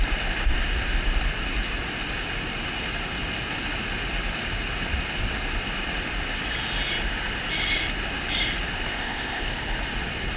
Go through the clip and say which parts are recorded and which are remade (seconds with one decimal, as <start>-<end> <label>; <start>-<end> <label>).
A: 0.0-8.9 recorded; 8.9-9.5 remade; 9.5-10.4 recorded